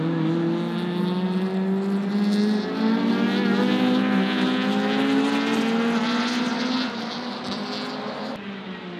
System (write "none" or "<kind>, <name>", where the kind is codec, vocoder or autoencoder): none